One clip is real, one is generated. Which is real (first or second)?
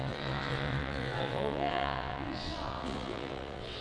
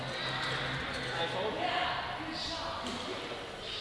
second